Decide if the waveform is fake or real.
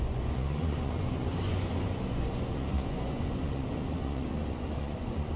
fake